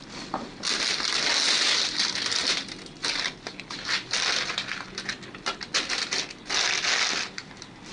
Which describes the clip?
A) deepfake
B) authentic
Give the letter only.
B